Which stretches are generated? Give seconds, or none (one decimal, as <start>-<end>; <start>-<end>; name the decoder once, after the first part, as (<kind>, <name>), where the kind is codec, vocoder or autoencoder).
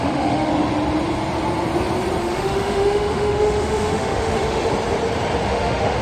0.0-0.5 (autoencoder, DAC-VAE); 2.2-4.7; 5.5-6.0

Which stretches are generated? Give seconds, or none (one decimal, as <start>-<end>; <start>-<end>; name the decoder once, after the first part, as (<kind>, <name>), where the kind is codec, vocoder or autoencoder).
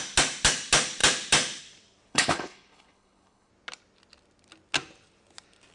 2.1-3.5 (codec, HILCodec)